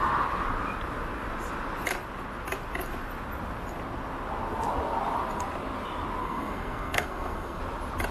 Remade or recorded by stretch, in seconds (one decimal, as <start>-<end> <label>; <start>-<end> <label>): 0.0-6.2 recorded; 6.2-7.6 remade; 7.6-8.1 recorded